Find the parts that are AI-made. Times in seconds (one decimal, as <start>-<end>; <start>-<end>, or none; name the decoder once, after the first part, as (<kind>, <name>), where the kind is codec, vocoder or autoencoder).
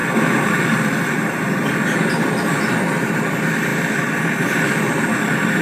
none